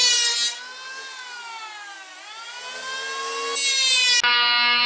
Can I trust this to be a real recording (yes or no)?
yes